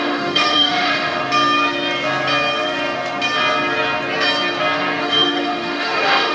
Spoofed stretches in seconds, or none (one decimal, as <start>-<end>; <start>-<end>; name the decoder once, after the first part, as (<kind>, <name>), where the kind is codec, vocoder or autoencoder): 0.0-1.2 (autoencoder, DAC-VAE); 5.0-6.3